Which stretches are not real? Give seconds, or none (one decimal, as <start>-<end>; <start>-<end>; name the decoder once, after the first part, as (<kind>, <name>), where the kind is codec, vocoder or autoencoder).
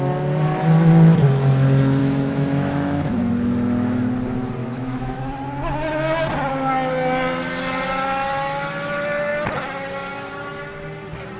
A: 2.0-3.3 (autoencoder, DAC-VAE); 4.6-5.2